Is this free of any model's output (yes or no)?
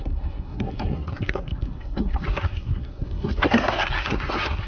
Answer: no